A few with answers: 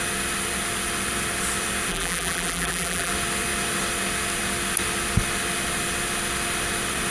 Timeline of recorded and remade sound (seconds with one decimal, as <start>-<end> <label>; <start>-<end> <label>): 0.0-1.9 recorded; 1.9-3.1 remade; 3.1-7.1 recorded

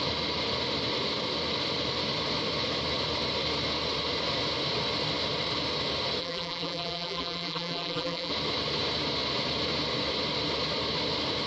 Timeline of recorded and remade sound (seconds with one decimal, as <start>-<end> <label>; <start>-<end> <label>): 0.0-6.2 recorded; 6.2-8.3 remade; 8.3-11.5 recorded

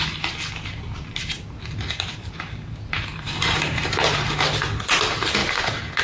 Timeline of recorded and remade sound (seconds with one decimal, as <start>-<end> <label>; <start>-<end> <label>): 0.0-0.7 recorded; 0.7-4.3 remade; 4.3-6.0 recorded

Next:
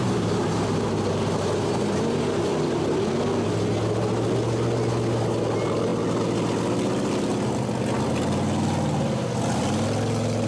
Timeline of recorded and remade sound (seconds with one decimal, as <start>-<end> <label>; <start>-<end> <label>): 0.0-2.2 remade; 2.2-10.5 recorded

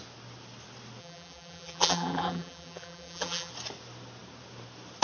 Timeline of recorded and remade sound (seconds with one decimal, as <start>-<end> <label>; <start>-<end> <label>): 0.0-1.0 recorded; 1.0-3.5 remade; 3.5-5.0 recorded

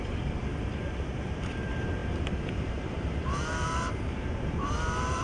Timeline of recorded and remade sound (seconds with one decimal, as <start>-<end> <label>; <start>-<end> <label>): 0.0-5.2 remade

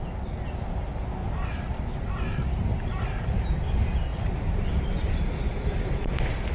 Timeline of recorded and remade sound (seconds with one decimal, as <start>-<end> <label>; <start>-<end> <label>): 0.0-1.2 recorded; 1.2-2.5 remade; 2.5-4.1 recorded; 4.1-5.1 remade; 5.1-6.5 recorded